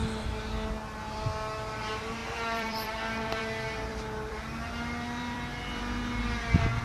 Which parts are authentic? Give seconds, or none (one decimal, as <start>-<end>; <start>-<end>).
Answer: 0.0-2.2; 3.4-3.9; 5.8-6.8